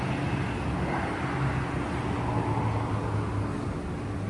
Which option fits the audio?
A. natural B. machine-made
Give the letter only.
A